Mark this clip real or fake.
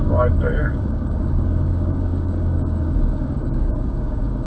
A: fake